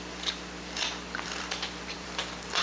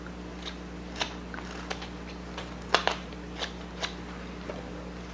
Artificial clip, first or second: first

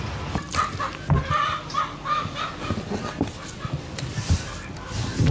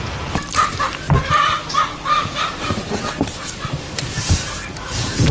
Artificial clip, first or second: second